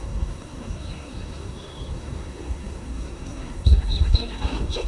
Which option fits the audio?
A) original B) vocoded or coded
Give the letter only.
B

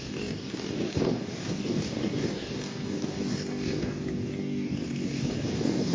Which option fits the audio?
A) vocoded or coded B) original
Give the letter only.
A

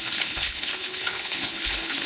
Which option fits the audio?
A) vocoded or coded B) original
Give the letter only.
A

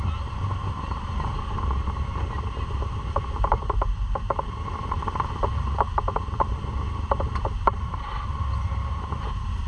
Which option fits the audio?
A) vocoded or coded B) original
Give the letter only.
A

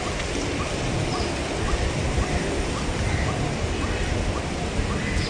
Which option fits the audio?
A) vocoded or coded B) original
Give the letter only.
B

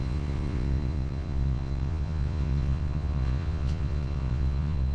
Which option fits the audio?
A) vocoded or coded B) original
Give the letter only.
A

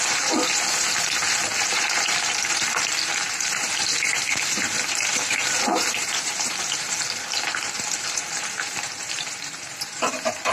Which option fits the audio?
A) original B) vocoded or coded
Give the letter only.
B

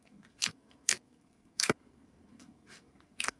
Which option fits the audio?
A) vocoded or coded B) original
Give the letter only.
A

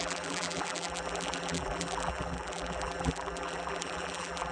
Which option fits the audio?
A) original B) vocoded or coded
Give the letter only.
B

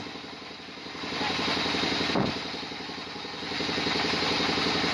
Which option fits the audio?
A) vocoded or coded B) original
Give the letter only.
B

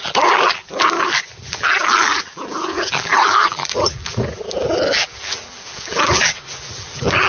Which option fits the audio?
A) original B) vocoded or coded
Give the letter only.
B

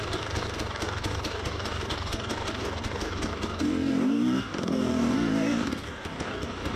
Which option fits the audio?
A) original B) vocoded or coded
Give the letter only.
B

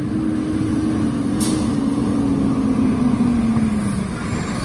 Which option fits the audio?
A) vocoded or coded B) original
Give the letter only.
B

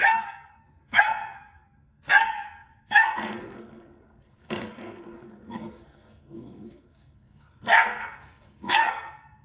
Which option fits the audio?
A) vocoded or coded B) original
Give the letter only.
A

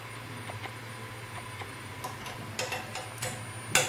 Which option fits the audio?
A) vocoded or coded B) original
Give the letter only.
B